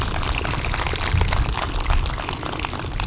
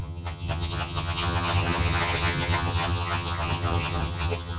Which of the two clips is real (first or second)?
first